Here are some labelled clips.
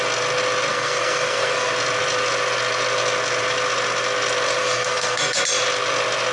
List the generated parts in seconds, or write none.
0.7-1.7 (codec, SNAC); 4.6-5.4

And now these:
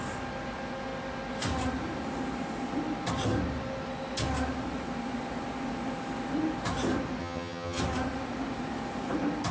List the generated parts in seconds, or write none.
7.2-7.8 (vocoder, HiFi-GAN)

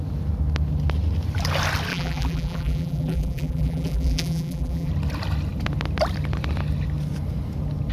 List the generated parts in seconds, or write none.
1.9-4.9 (vocoder, BigVGAN v2)

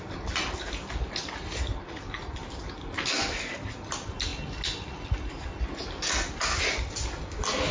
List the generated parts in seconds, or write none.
3.2-3.7 (codec, DAC)